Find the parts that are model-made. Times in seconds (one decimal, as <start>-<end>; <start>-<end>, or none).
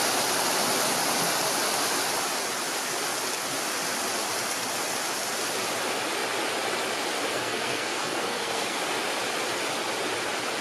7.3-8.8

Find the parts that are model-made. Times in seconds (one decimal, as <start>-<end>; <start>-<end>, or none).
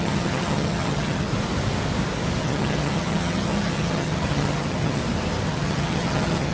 0.0-1.3; 2.4-5.0; 5.5-6.5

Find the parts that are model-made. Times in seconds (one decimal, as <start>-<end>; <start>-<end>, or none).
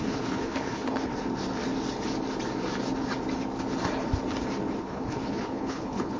0.0-1.1; 4.8-6.2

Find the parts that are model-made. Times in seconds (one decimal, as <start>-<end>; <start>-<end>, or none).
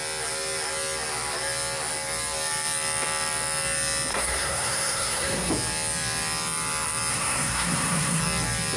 4.1-5.5; 7.1-8.2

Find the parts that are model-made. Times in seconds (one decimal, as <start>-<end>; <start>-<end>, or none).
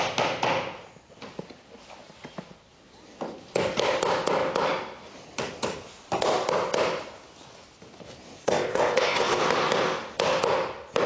8.4-9.4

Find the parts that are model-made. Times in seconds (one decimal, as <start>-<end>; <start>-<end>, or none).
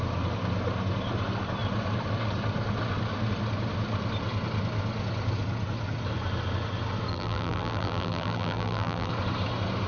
7.1-9.1